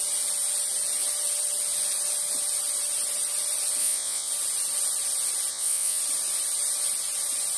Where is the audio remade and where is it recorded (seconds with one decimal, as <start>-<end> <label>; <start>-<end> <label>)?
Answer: 0.0-3.8 recorded; 3.8-4.3 remade; 4.3-5.5 recorded; 5.5-6.0 remade; 6.0-7.6 recorded